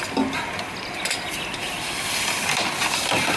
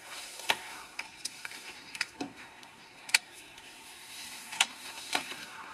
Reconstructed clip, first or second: second